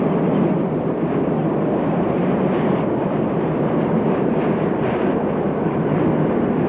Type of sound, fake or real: real